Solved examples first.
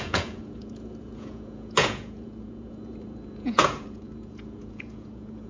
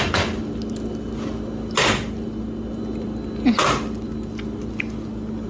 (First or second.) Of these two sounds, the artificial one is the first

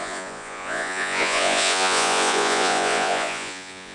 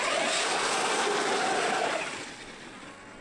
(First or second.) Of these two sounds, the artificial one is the first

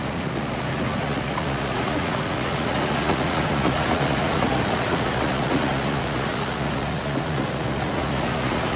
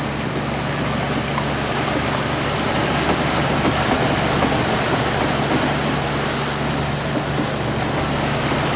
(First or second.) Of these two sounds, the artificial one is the first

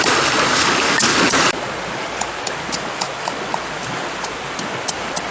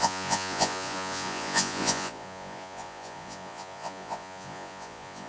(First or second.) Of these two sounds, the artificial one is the second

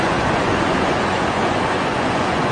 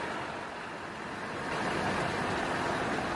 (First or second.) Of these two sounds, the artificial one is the first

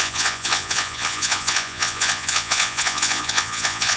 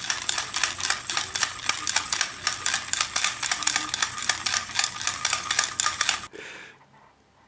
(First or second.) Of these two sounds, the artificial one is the first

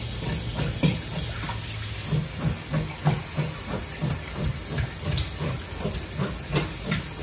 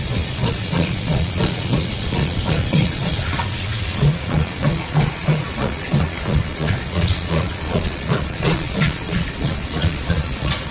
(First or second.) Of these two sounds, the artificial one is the second